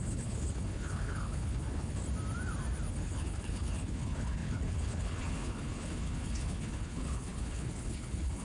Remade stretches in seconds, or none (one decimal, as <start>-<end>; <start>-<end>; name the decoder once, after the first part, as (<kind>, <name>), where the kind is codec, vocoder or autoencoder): 0.0-2.0 (codec, HILCodec); 2.9-8.4